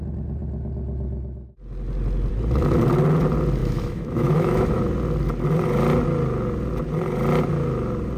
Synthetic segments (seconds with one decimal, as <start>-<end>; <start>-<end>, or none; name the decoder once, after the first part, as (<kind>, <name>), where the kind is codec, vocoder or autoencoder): 3.6-4.8 (autoencoder, DAC-VAE)